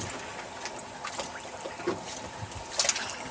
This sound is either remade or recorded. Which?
recorded